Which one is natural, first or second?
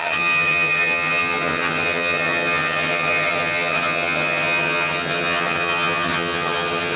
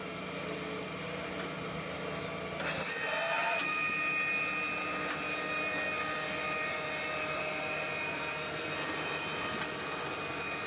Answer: second